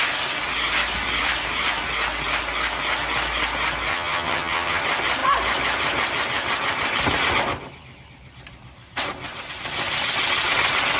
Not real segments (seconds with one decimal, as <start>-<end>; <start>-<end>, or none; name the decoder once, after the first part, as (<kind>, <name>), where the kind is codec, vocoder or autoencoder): 3.9-4.8 (vocoder, HiFi-GAN)